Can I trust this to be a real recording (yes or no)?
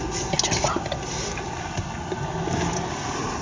yes